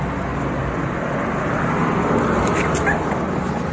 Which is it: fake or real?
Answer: real